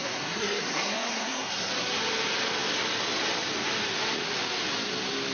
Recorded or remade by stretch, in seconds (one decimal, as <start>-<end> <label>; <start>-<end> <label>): 0.0-1.7 remade; 1.7-5.3 recorded